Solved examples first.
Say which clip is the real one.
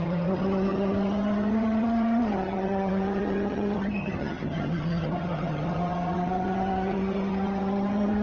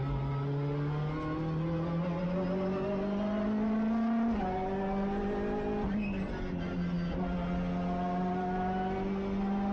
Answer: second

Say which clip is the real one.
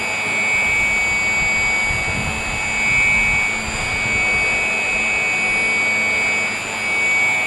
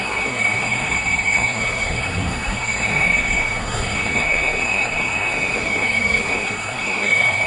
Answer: first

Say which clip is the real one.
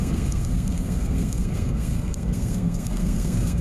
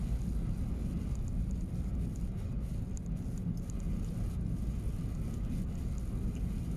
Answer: second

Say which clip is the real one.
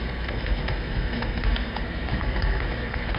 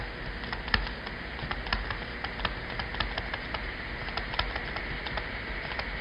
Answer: second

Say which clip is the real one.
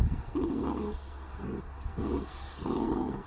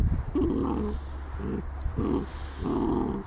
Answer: second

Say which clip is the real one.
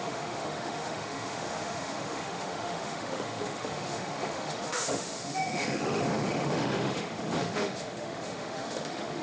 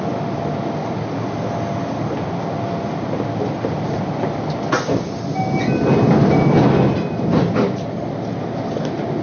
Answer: second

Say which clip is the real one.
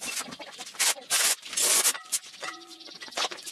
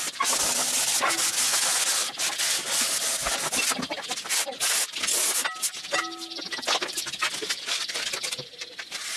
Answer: second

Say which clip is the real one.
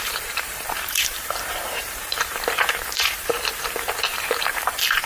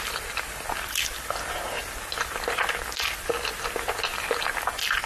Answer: second